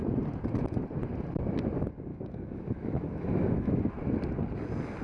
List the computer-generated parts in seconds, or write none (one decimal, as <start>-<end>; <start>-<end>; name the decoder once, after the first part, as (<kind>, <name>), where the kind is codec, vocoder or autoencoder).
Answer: 2.1-3.9 (autoencoder, DAC-VAE)